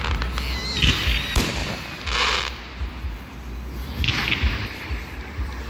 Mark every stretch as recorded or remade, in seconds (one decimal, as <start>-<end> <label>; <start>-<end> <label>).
0.0-5.7 recorded